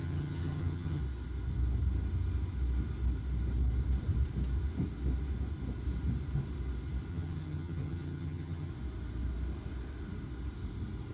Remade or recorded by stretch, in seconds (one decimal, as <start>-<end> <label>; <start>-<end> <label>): 0.0-1.0 remade; 1.0-7.1 recorded; 7.1-8.7 remade; 8.7-11.1 recorded